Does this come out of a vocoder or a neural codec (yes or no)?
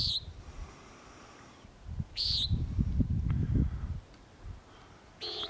no